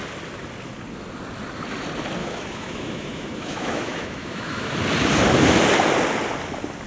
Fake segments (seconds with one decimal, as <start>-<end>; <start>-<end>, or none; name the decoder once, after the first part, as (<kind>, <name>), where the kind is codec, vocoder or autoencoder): 2.2-4.7 (autoencoder, DAC-VAE)